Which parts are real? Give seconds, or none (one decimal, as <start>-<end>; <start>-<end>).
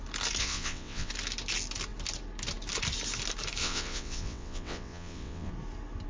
0.0-0.4; 1.1-3.6; 5.5-6.1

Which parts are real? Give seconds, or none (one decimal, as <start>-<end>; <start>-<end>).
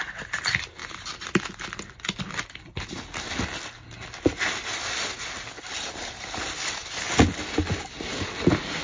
0.0-0.8; 1.5-8.8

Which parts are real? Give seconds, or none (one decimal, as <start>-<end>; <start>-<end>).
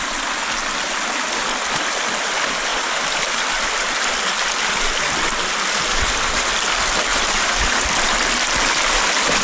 0.0-2.7; 3.4-5.9; 6.5-7.1; 7.7-9.4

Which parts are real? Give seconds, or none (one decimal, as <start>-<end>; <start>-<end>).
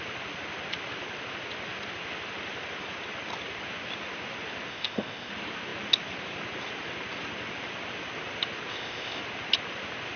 0.0-4.7; 5.3-8.7; 9.2-10.2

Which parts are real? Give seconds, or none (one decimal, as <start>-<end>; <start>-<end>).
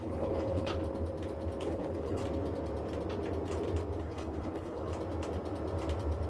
0.7-1.6; 2.2-4.0; 4.9-6.3